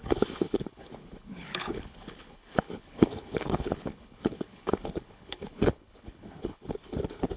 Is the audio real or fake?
fake